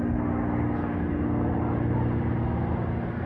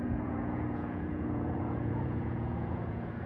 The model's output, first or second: second